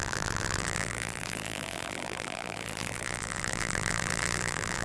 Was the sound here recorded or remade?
remade